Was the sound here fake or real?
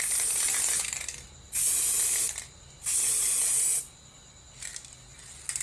real